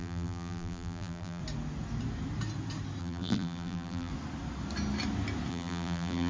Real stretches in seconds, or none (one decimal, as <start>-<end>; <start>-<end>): 1.4-3.0; 4.1-5.5